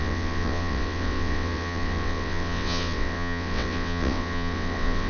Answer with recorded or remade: remade